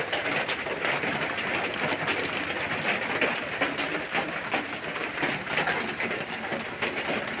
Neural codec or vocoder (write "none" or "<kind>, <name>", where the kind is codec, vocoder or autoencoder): none